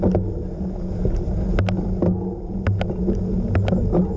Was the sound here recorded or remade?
recorded